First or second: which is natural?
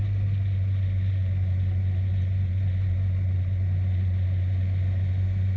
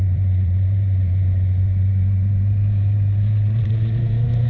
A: first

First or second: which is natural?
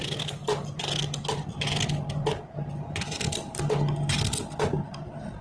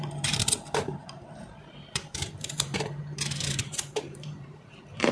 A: first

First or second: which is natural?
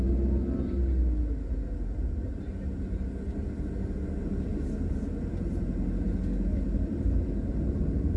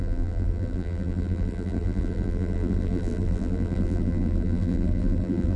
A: first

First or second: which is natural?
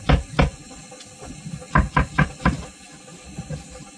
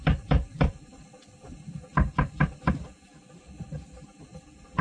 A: first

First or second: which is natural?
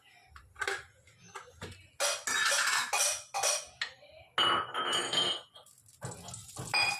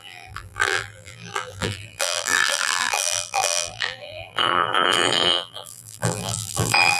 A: first